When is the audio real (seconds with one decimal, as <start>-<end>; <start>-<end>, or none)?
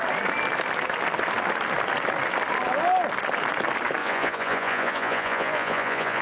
0.0-4.0